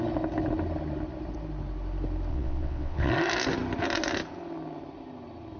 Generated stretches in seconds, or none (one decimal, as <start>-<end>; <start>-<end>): 2.3-3.1